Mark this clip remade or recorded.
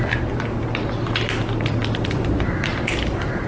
recorded